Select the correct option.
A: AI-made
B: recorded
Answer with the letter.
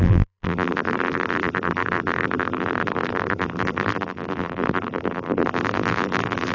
A